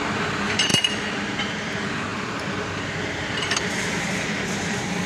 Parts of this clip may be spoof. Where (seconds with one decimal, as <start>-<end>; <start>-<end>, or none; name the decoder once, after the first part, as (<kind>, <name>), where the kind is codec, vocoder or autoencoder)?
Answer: 0.7-1.7 (vocoder, BigVGAN v2); 2.1-4.2